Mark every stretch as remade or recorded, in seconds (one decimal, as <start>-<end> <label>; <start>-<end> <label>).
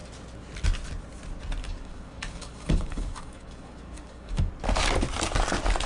0.0-1.6 recorded; 1.6-4.5 remade; 4.5-5.9 recorded